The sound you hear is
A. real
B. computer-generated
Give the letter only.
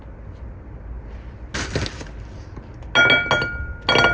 A